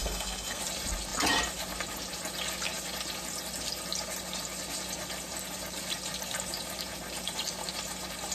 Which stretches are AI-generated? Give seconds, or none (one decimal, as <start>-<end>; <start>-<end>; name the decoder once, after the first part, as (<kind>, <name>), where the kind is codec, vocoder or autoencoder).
0.0-0.6 (codec, SNAC)